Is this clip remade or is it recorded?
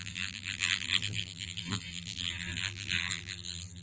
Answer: remade